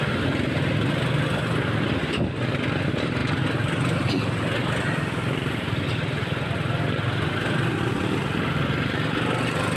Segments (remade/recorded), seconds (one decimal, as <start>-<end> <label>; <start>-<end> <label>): 0.0-9.8 recorded